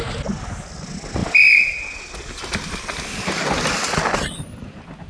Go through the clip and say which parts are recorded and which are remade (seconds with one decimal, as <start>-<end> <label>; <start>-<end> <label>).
0.0-5.1 recorded